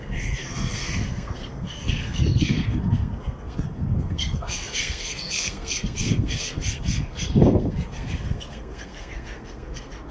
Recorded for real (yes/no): no